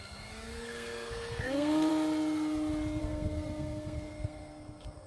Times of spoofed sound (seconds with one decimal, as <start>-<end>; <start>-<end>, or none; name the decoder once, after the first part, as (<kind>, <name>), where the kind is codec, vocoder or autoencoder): 0.0-1.9 (codec, SNAC); 3.0-5.1